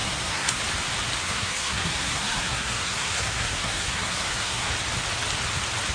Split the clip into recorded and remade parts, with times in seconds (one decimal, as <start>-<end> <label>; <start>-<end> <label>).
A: 0.0-0.6 remade; 0.6-1.2 recorded; 1.2-4.7 remade; 4.7-5.9 recorded